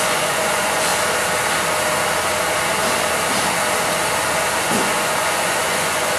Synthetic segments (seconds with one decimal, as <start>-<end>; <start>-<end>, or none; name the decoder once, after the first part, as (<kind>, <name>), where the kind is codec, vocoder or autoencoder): 0.0-0.9 (vocoder, Vocos); 4.6-6.2